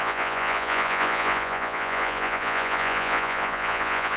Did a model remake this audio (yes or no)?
yes